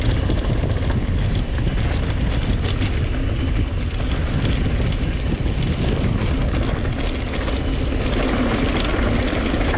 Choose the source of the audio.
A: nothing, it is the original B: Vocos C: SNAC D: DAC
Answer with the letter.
A